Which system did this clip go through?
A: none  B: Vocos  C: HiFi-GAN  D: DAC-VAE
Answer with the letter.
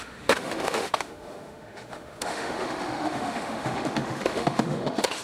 D